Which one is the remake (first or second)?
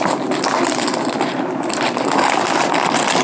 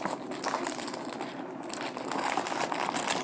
first